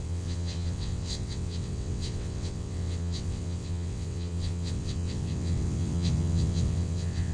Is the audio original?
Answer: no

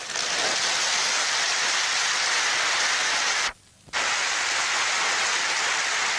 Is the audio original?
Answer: yes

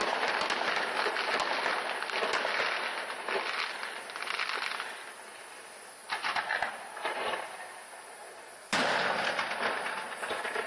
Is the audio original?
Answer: yes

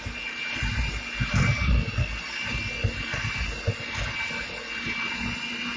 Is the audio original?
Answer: yes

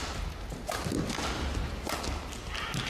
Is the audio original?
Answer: yes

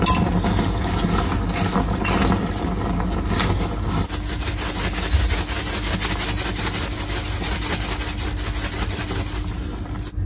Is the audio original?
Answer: yes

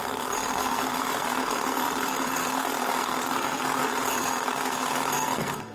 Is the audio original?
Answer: no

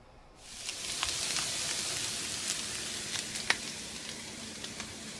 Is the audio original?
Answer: yes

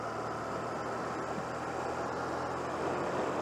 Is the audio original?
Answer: yes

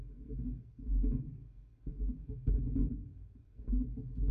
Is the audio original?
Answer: no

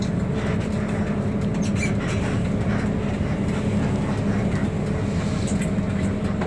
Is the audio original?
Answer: yes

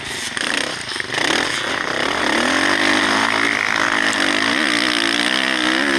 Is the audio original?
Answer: yes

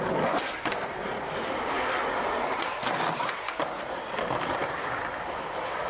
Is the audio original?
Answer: yes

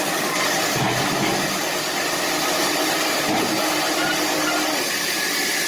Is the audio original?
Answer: yes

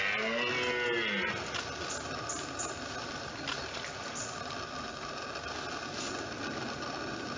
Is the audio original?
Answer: yes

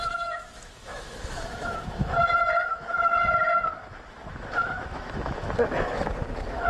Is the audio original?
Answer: no